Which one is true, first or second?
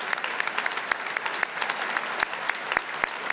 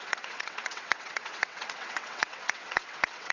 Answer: first